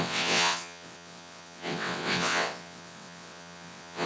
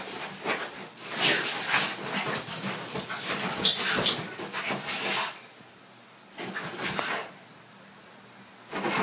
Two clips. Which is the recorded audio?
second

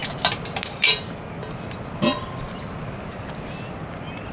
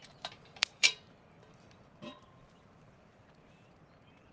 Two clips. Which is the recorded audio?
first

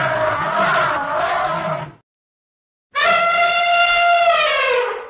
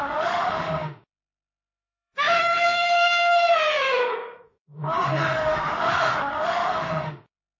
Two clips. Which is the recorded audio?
first